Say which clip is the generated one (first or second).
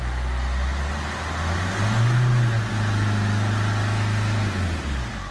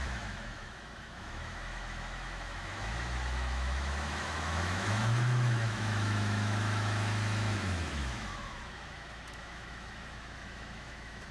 second